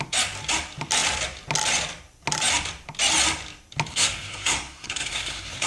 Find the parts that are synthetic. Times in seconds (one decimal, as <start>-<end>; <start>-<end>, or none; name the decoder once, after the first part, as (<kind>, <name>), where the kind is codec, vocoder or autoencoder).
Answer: 3.9-5.7 (codec, SNAC)